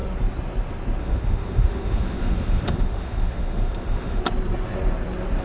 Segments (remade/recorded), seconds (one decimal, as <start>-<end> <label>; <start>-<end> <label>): 0.0-1.0 recorded; 1.0-4.2 remade; 4.2-5.4 recorded